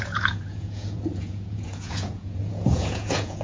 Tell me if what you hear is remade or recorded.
remade